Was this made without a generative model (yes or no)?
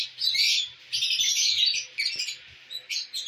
yes